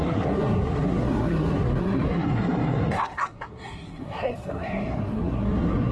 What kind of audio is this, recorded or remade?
remade